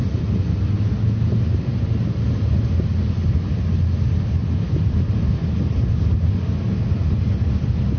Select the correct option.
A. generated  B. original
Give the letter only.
B